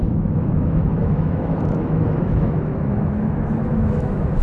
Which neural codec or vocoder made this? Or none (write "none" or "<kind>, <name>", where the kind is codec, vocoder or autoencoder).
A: autoencoder, DAC-VAE